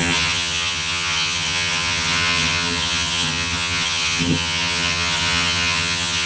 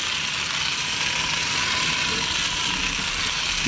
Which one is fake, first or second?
first